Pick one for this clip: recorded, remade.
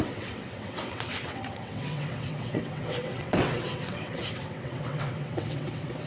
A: remade